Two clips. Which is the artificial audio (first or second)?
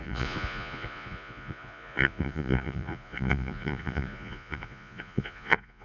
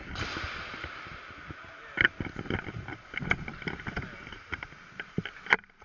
first